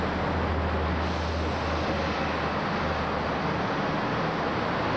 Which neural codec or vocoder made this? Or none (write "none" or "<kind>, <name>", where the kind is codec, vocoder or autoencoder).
none